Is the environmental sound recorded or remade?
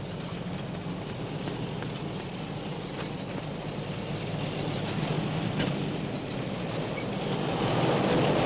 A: recorded